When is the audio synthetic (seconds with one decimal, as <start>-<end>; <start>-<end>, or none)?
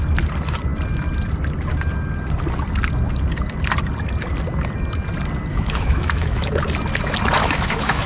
5.5-6.5; 7.4-8.1